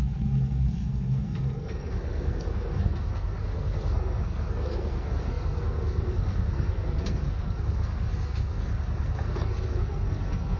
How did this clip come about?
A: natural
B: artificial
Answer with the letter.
B